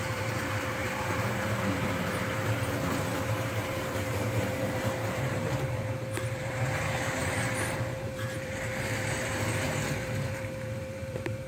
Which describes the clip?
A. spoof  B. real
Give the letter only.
A